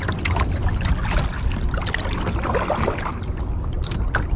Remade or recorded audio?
recorded